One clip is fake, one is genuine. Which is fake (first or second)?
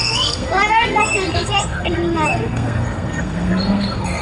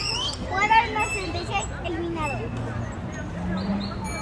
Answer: first